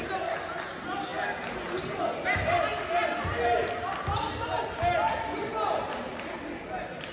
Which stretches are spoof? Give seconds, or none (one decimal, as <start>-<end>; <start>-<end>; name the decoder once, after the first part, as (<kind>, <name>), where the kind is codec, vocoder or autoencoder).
none